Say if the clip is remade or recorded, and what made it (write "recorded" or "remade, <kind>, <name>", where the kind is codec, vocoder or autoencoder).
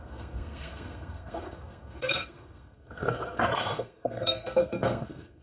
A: remade, codec, SNAC